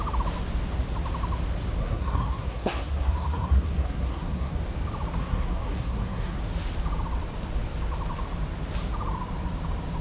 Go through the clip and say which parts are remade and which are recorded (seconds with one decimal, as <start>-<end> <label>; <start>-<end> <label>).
0.0-1.8 recorded; 1.8-4.6 remade; 4.6-5.2 recorded; 5.2-6.4 remade; 6.4-10.0 recorded